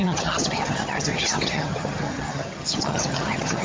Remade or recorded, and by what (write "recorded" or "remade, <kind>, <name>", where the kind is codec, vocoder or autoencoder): remade, vocoder, HiFi-GAN